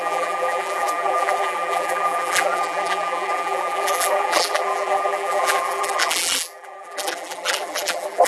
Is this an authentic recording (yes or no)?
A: no